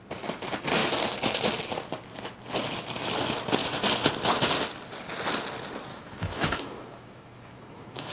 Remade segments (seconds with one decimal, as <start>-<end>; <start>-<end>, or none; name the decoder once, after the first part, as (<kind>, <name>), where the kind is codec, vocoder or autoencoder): 5.9-8.1 (autoencoder, DAC-VAE)